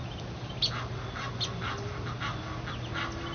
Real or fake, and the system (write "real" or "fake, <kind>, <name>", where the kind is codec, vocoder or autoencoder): real